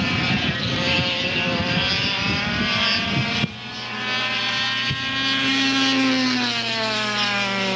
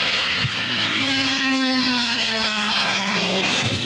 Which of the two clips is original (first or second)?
first